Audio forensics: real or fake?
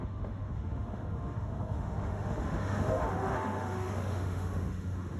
fake